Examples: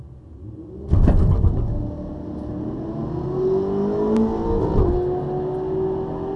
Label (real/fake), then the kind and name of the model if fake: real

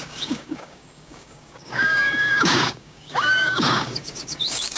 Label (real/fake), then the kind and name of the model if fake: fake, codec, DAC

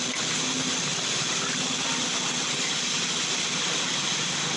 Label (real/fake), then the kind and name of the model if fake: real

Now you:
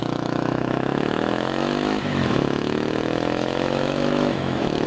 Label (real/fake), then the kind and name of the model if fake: fake, autoencoder, DAC-VAE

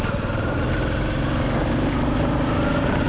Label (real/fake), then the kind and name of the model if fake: real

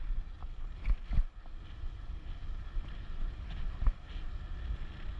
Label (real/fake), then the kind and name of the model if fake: real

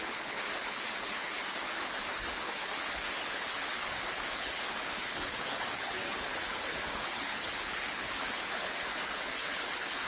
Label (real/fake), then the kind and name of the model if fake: fake, codec, HILCodec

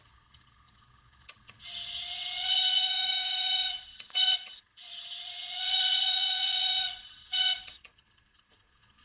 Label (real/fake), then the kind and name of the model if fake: fake, vocoder, Vocos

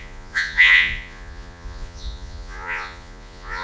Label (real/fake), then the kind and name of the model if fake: fake, vocoder, Vocos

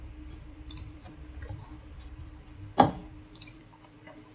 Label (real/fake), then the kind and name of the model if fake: fake, vocoder, BigVGAN v2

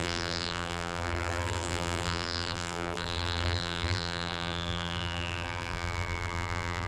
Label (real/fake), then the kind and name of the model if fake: fake, vocoder, BigVGAN v2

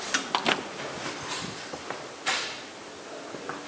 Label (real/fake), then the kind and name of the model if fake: real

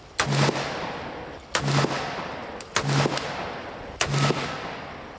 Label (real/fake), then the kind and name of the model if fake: real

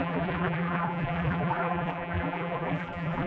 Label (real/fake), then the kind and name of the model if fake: fake, vocoder, BigVGAN v2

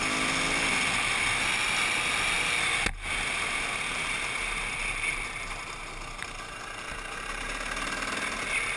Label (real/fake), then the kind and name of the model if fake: real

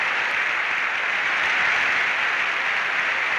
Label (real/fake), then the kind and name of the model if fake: real